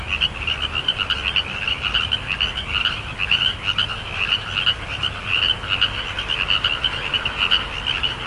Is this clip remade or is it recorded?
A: recorded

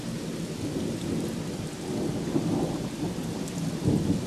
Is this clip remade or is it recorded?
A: recorded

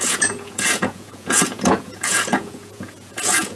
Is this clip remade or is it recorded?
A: remade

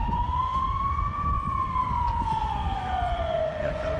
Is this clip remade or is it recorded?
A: remade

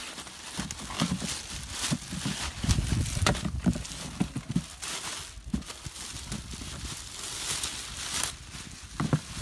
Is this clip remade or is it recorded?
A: recorded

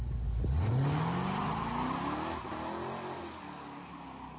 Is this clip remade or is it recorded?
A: recorded